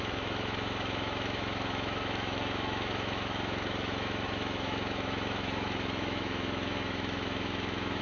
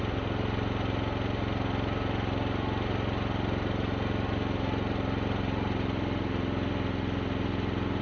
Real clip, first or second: second